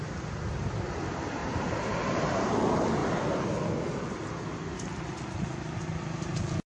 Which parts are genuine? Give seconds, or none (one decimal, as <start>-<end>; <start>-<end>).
0.0-1.4; 2.5-6.7